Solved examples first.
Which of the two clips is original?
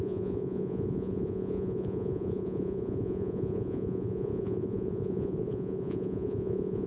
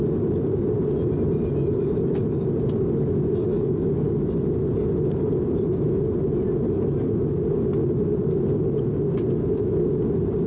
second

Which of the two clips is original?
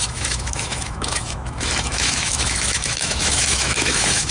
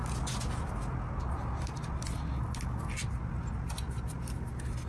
second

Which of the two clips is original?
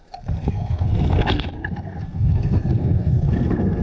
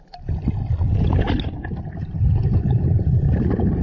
second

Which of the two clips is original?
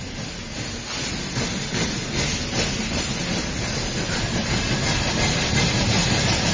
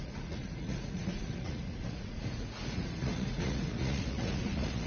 first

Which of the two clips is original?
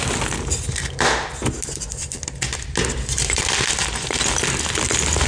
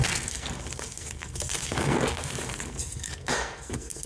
first